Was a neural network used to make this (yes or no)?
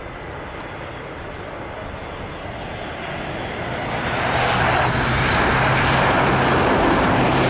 no